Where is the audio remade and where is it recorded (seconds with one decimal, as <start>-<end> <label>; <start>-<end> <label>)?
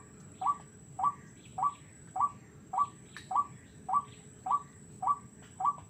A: 0.0-5.9 recorded